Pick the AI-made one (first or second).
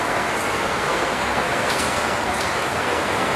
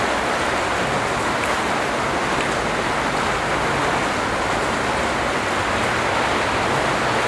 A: first